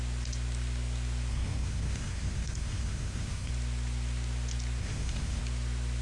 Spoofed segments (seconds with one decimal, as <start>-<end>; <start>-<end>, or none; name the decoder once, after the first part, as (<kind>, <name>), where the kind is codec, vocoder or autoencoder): 1.3-3.5 (codec, SNAC); 4.8-5.4